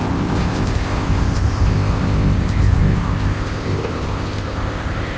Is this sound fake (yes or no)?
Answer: yes